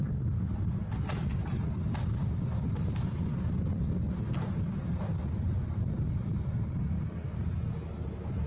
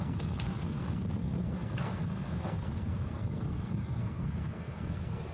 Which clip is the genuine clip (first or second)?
first